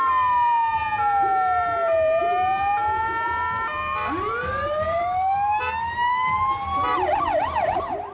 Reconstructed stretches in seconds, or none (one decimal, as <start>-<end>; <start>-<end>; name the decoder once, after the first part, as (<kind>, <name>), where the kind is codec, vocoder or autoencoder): none